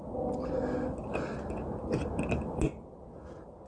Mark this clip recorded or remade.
recorded